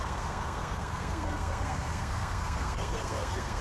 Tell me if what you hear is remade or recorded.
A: remade